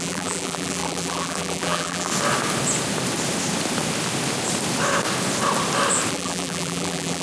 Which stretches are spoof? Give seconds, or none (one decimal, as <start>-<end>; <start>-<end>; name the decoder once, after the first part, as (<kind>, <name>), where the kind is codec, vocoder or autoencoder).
0.0-2.1 (vocoder, BigVGAN v2); 6.1-7.2